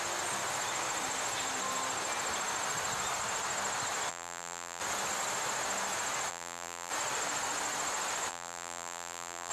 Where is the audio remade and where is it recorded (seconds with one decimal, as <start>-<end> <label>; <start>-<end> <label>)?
0.0-4.1 recorded; 4.1-4.8 remade; 4.8-6.3 recorded; 6.3-6.9 remade; 6.9-8.3 recorded; 8.3-9.5 remade